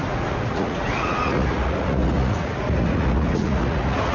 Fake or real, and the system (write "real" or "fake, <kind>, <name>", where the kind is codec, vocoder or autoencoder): fake, vocoder, Vocos